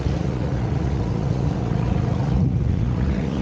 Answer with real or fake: fake